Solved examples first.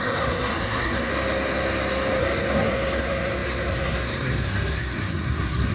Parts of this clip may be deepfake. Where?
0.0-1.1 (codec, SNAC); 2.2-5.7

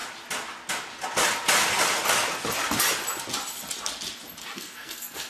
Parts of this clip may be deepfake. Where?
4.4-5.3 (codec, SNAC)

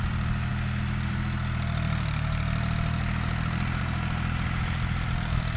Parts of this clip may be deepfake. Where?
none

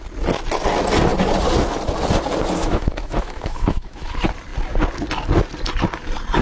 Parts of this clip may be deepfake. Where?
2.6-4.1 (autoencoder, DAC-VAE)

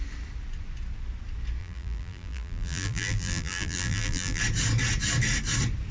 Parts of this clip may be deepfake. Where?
1.6-4.4 (vocoder, BigVGAN v2)

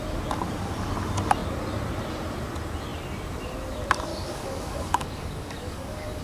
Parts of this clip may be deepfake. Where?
4.1-6.2 (codec, DAC)